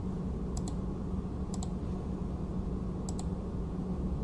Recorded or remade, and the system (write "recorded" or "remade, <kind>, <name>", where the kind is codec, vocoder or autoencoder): recorded